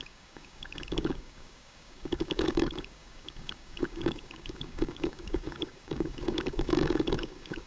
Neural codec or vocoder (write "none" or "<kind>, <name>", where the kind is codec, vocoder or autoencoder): codec, DAC